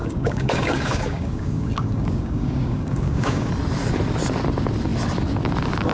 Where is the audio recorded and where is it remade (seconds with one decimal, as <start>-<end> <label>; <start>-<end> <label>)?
0.0-3.5 remade; 3.5-5.9 recorded